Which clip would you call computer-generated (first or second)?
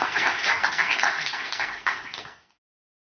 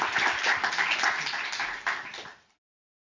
first